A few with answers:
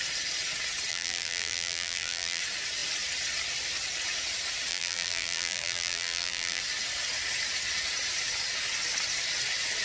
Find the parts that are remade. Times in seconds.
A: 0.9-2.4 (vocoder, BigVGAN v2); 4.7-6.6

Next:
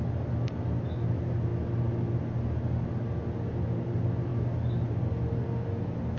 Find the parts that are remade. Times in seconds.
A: none

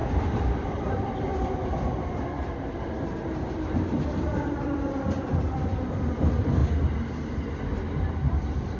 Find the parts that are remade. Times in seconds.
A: 0.5-1.3 (vocoder, BigVGAN v2); 1.8-6.6; 8.1-8.8

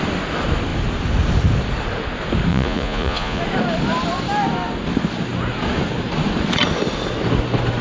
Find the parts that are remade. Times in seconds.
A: 2.5-3.4 (vocoder, Vocos)

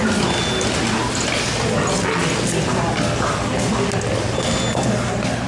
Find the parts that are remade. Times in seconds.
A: none

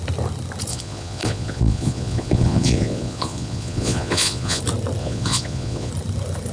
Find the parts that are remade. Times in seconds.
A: 0.7-4.6 (vocoder, Vocos); 5.0-5.9